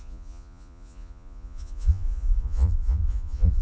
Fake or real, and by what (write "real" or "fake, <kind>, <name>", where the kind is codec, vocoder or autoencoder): fake, vocoder, Vocos